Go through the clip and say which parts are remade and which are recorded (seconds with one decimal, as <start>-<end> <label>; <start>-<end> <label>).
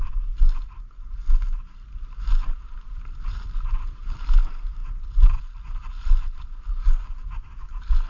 0.0-8.1 recorded